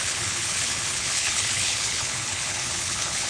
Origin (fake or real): fake